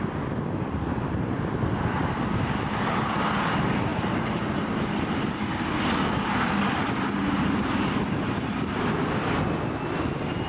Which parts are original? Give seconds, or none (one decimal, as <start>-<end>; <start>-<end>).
0.0-10.5